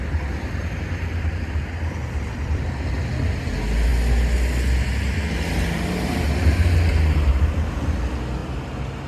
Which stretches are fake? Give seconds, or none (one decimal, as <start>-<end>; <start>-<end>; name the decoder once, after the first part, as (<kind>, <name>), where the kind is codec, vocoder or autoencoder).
none